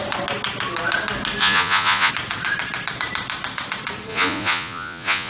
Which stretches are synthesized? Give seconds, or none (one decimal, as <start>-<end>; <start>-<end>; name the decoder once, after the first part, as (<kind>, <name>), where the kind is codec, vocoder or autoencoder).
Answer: 1.4-2.1 (vocoder, Vocos); 4.1-5.3